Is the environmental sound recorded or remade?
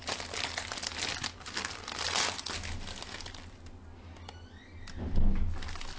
recorded